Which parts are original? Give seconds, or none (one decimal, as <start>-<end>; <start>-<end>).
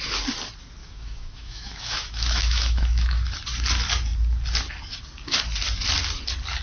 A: 0.0-0.8; 3.3-6.6